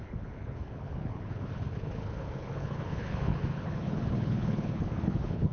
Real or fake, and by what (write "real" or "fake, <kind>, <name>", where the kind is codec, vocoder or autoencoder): fake, codec, HILCodec